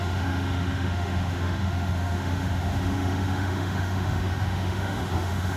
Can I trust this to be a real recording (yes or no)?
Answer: no